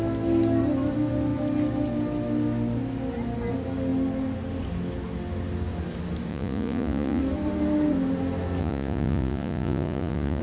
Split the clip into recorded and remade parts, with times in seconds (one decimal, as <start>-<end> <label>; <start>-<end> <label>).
0.0-6.3 recorded; 6.3-7.2 remade; 7.2-8.6 recorded; 8.6-10.4 remade